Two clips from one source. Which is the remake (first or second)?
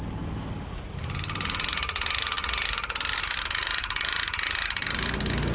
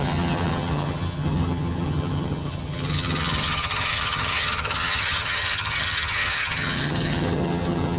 second